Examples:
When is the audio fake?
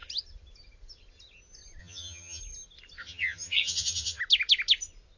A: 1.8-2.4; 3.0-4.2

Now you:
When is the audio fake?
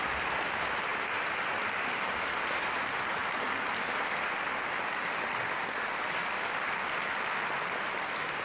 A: 3.2-4.3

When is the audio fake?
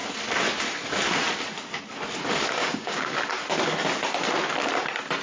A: 2.6-3.2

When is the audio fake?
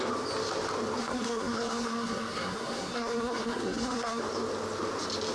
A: 1.0-4.2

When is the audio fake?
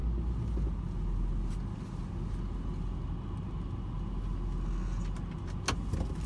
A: none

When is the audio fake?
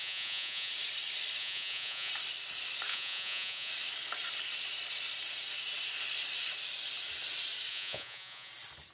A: 0.0-0.7; 1.4-2.1; 2.9-3.7; 7.7-8.5